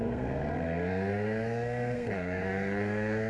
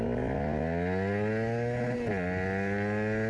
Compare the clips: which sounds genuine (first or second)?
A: second